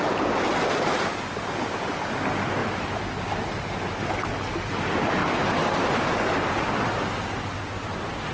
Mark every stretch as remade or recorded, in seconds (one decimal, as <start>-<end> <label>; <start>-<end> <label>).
0.0-8.3 recorded